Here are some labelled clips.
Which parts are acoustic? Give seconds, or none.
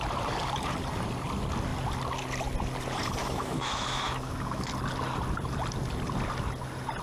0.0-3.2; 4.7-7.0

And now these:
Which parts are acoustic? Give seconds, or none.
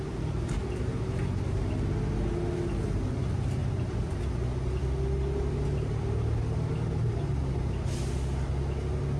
0.0-9.2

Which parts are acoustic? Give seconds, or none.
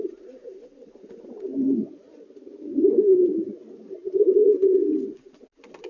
1.5-5.0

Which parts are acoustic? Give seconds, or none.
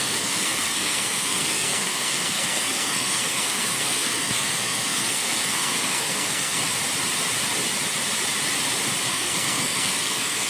6.6-9.1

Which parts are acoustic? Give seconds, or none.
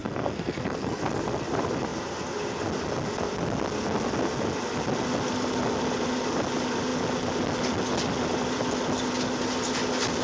1.0-10.2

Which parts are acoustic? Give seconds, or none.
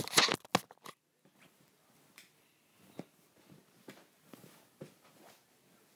0.0-6.0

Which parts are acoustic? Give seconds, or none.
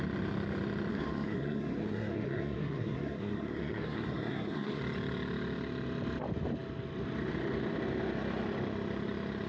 0.0-0.9; 4.8-9.5